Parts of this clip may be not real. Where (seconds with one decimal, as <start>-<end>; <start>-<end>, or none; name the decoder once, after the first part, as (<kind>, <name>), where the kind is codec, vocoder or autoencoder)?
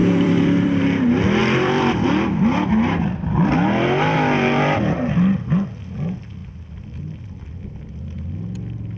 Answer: 0.0-0.8 (vocoder, BigVGAN v2); 1.4-1.9